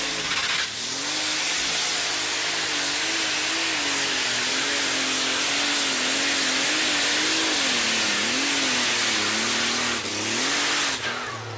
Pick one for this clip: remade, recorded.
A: recorded